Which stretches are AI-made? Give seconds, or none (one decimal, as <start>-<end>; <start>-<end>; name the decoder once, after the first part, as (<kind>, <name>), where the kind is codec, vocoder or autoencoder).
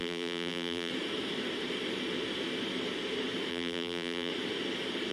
0.0-0.9 (vocoder, BigVGAN v2); 3.5-4.3